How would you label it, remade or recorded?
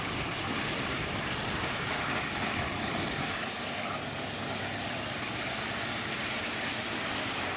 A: remade